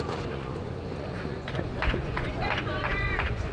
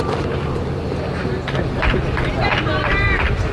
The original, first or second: second